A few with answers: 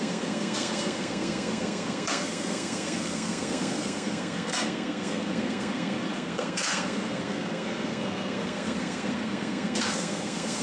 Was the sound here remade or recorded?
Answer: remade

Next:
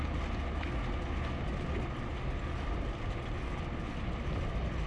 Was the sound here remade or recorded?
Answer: recorded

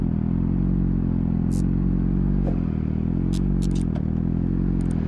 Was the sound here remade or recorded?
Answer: recorded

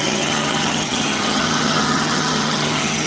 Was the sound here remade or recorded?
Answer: remade